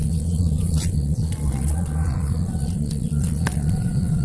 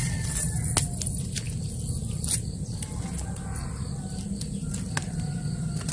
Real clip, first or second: second